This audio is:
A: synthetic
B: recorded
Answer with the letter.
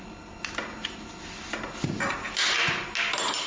B